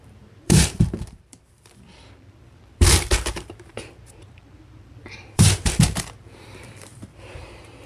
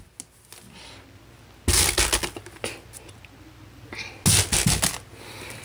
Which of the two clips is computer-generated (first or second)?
first